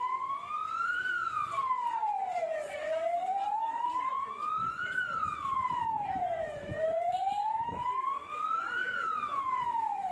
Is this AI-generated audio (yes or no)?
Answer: yes